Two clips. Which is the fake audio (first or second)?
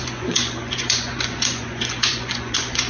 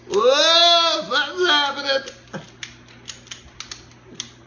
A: first